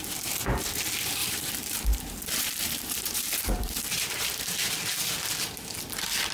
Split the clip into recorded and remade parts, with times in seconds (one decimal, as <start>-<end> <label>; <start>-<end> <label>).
0.0-1.2 recorded; 1.2-4.7 remade; 4.7-6.3 recorded